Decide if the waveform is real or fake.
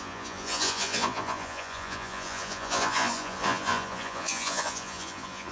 fake